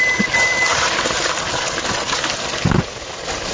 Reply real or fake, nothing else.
real